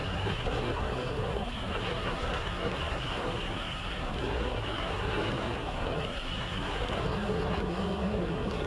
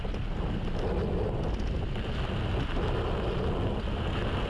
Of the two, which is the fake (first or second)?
first